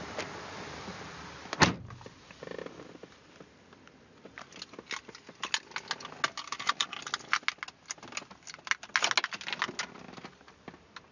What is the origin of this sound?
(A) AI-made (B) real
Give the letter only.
B